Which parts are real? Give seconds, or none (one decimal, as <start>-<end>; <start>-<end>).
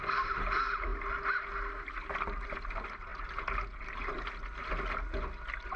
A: 0.0-5.8